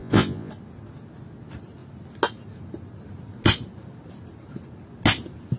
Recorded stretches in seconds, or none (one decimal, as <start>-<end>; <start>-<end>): 0.5-5.6